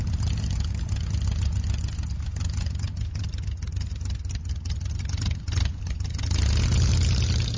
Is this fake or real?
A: real